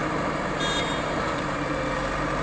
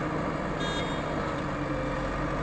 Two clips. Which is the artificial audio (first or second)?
first